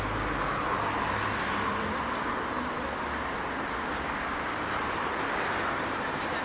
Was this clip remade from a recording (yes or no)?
no